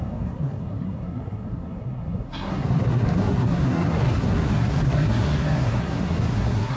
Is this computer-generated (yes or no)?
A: yes